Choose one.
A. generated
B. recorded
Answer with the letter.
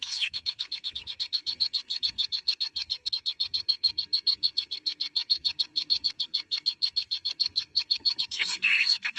A